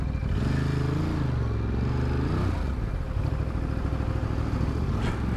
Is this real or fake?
real